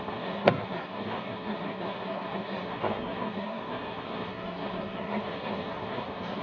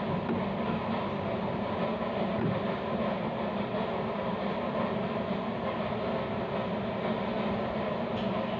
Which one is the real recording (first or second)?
second